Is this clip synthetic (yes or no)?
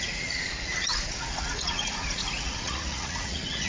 yes